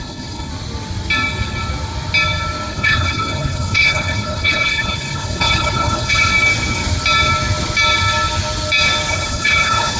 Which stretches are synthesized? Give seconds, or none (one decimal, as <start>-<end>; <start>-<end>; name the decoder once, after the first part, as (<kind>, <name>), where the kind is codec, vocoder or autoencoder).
0.0-0.5 (codec, HILCodec); 2.7-6.3; 9.1-10.0